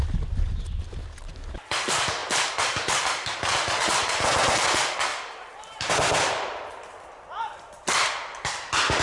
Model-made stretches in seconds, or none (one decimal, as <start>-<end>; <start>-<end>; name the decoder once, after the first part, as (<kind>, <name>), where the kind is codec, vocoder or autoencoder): 5.1-5.8 (vocoder, BigVGAN v2)